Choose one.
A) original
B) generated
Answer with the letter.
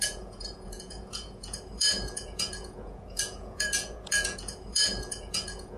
B